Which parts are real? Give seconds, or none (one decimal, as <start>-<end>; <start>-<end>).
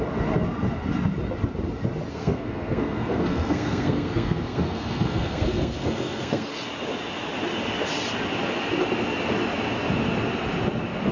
0.0-2.1; 6.5-11.1